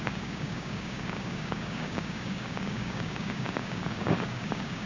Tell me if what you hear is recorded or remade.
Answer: remade